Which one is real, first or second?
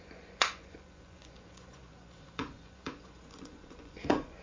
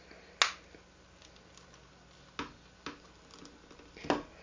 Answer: second